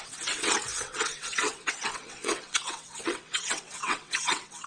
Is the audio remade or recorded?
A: remade